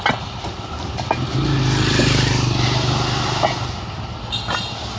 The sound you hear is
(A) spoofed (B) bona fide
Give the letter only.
B